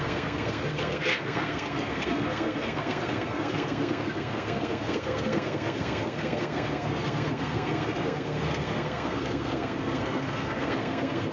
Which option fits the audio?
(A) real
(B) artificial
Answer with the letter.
B